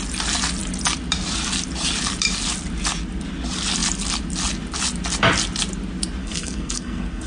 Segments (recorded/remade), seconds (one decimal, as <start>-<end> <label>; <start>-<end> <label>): 0.0-6.2 recorded; 6.2-7.3 remade